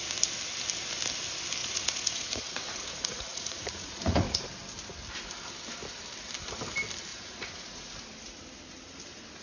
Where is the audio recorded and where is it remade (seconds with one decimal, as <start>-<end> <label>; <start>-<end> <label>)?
0.0-1.6 recorded; 1.6-4.5 remade; 4.5-7.1 recorded; 7.1-7.9 remade; 7.9-9.4 recorded